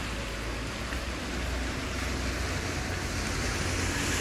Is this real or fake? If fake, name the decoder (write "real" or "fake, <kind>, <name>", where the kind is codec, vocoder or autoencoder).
real